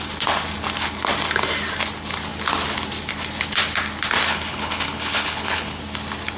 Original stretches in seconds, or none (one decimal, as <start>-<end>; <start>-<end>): 0.0-4.3; 5.8-6.4